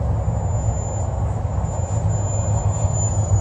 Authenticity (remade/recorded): recorded